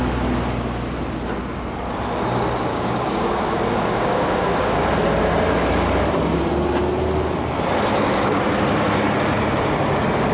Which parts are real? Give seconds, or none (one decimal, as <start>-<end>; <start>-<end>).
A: 0.0-2.7; 4.8-10.3